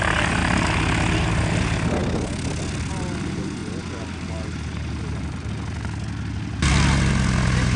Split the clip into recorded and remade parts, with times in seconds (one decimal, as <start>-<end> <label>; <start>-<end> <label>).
0.0-7.8 recorded